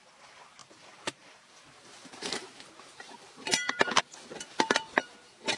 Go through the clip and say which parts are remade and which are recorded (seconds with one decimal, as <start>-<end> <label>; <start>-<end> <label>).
0.0-0.6 recorded; 0.6-4.0 remade; 4.0-5.6 recorded

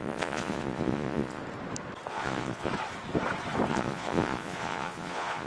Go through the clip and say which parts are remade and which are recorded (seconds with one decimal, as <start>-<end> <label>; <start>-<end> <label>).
0.0-1.4 remade; 1.4-2.1 recorded; 2.1-2.7 remade; 2.7-3.7 recorded; 3.7-5.5 remade

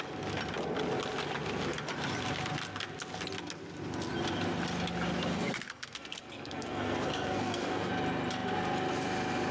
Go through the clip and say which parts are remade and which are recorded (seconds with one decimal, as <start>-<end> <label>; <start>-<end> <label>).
0.0-5.3 recorded; 5.3-7.9 remade; 7.9-9.5 recorded

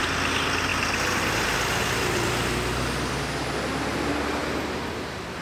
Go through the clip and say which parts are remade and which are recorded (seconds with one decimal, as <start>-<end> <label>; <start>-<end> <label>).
0.0-5.4 recorded

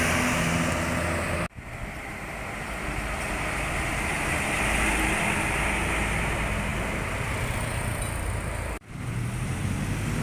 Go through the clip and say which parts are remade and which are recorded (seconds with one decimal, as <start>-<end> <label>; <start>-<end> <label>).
0.0-10.2 recorded